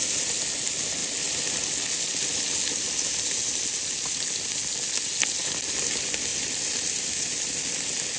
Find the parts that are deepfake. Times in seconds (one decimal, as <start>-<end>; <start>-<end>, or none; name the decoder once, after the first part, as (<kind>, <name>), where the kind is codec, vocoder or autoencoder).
6.3-7.4 (vocoder, BigVGAN v2)